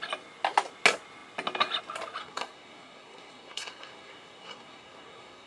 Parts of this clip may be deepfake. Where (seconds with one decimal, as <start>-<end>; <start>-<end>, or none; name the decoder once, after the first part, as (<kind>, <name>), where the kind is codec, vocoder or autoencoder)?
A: 2.2-5.5 (codec, SNAC)